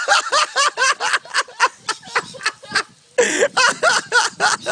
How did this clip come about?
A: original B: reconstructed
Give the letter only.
A